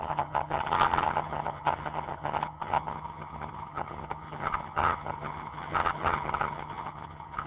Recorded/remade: remade